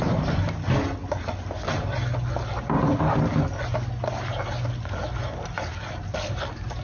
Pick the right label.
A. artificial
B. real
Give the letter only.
B